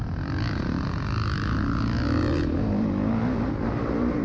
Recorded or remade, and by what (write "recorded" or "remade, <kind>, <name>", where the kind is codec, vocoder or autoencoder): recorded